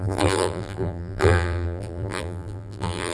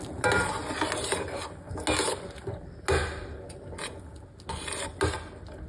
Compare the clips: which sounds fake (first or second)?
first